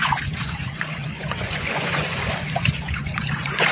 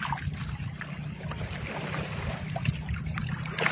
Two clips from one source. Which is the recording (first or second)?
second